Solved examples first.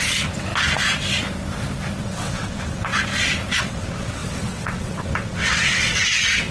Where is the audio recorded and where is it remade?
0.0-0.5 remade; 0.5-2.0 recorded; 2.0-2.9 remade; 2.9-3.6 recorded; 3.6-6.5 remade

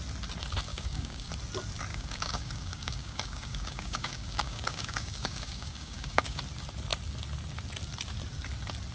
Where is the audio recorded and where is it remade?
0.0-0.7 recorded; 0.7-1.3 remade; 1.3-1.9 recorded; 1.9-6.4 remade; 6.4-8.9 recorded

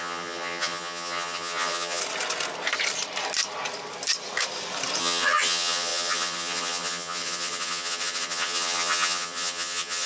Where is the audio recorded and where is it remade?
0.0-2.0 remade; 2.0-5.0 recorded; 5.0-10.1 remade

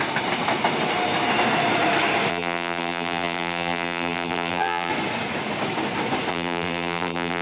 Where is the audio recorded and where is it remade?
0.0-2.3 recorded; 2.3-4.9 remade; 4.9-6.3 recorded; 6.3-7.4 remade

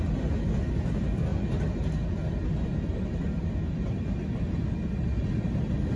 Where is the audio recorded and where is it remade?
0.0-6.0 recorded

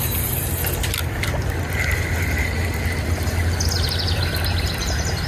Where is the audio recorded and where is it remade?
0.0-5.3 recorded

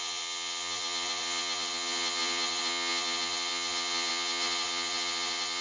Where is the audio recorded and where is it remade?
0.0-5.6 remade